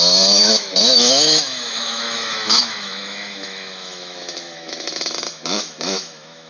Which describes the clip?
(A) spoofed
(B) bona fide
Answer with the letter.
A